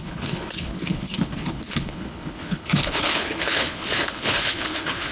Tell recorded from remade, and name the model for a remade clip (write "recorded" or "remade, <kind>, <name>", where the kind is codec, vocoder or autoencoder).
remade, codec, HILCodec